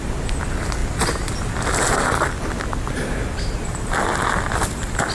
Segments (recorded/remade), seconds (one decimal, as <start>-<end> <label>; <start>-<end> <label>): 0.0-5.1 recorded